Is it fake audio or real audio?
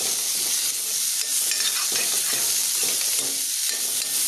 real